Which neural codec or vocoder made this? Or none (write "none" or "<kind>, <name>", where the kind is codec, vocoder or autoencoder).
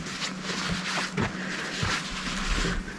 none